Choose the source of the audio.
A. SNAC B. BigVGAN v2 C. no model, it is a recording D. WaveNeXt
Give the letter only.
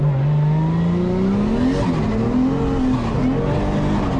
C